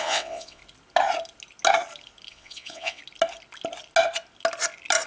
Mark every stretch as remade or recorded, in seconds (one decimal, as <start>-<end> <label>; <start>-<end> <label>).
0.0-0.6 remade; 0.6-2.3 recorded; 2.3-3.0 remade; 3.0-5.1 recorded